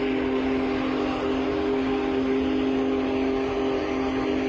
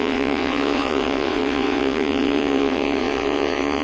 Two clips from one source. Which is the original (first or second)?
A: first